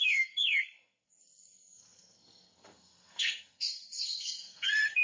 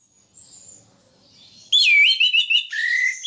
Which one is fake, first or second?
first